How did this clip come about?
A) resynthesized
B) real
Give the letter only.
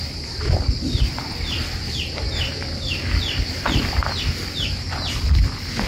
A